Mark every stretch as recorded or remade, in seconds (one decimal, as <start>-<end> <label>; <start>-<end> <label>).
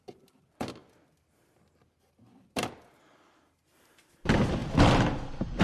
0.0-5.6 recorded